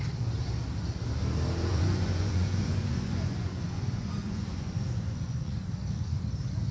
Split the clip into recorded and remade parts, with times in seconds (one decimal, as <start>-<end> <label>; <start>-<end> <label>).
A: 0.0-1.7 recorded; 1.7-5.7 remade; 5.7-6.7 recorded